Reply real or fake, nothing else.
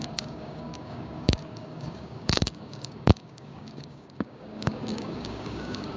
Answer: fake